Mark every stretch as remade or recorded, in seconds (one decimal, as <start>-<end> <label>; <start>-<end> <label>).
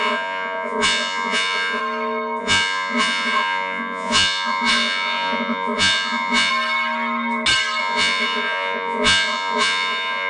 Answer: 0.0-1.8 remade; 1.8-2.4 recorded; 2.4-6.5 remade; 6.5-7.8 recorded; 7.8-10.3 remade